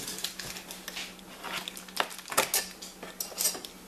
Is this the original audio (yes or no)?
yes